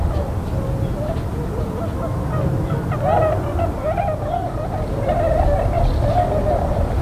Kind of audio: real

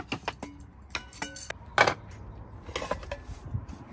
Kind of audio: real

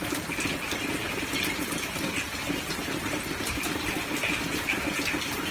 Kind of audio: real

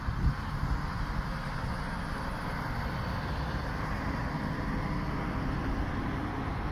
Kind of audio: real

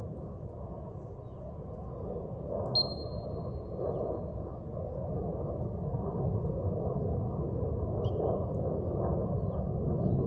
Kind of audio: real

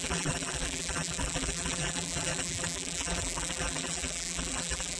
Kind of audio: fake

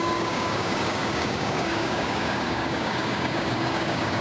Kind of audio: fake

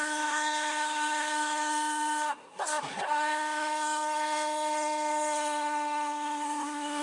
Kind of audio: fake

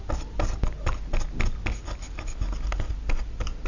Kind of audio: real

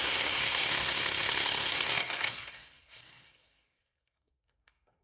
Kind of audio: fake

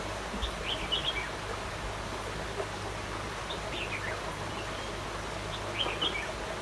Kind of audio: real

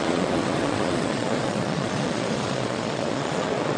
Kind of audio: fake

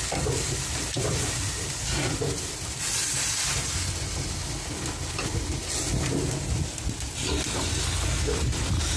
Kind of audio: real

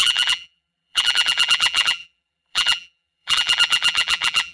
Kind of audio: fake